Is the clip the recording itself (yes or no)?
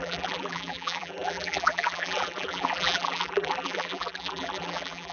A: no